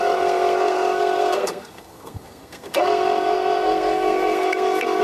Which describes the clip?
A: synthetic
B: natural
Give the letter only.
A